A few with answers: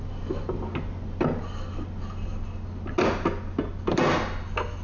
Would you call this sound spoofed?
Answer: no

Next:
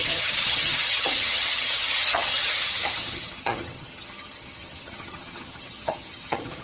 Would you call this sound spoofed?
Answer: yes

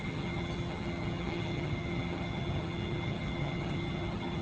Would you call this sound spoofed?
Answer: yes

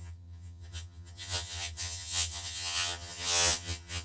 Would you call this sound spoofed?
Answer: yes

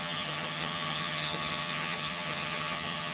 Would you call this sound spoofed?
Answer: yes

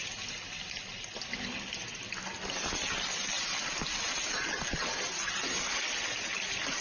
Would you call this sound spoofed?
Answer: no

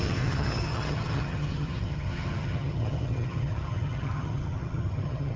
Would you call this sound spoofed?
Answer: yes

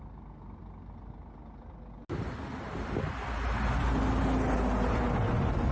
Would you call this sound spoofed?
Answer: no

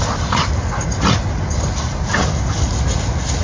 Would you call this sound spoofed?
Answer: no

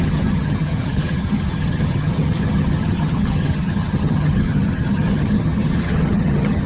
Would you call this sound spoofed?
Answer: yes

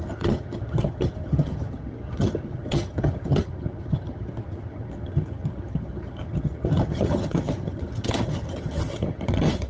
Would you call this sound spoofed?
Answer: yes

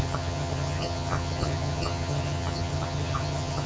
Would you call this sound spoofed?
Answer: yes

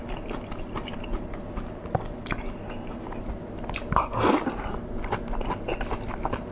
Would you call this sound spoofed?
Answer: no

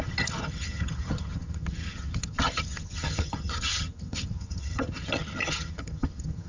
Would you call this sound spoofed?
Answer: yes